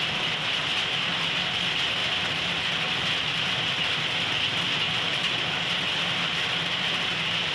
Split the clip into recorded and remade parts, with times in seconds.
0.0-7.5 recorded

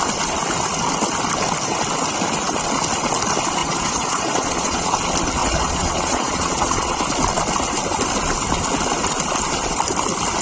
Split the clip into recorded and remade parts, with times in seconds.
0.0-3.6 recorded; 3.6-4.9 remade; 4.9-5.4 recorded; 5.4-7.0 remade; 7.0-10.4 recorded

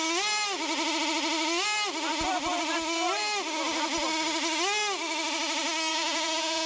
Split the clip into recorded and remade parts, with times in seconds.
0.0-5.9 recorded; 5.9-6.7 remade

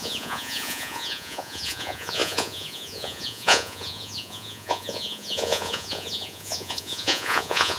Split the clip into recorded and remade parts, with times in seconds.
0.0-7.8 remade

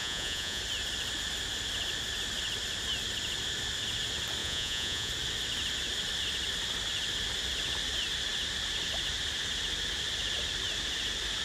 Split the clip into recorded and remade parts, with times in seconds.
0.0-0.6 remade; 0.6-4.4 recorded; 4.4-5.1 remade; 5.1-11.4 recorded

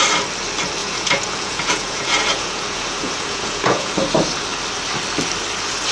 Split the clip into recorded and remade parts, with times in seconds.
0.0-0.8 recorded; 0.8-3.9 remade; 3.9-5.9 recorded